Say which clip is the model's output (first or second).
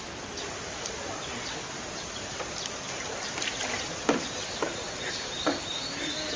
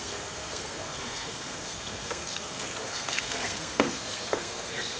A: second